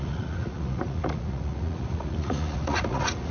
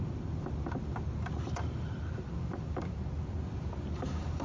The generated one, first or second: first